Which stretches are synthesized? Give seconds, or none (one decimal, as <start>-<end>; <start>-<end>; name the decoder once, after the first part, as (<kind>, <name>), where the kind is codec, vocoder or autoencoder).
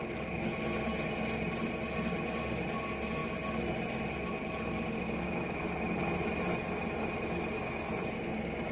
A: none